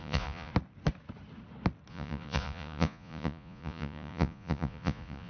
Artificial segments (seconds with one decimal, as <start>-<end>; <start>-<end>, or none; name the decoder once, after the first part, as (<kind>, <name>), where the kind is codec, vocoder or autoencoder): 0.0-0.5 (vocoder, Vocos); 1.9-5.3